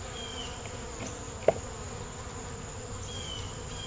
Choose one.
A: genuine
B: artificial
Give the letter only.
A